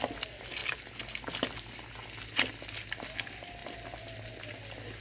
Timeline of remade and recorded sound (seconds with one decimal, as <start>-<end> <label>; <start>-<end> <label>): 0.0-5.0 recorded